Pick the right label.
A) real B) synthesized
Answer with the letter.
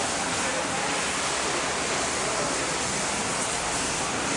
A